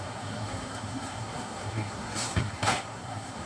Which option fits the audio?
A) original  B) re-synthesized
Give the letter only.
B